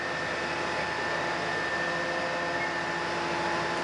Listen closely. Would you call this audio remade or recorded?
recorded